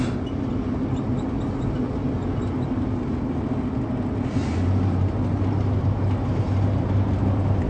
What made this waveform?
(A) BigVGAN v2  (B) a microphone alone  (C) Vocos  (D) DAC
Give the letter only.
B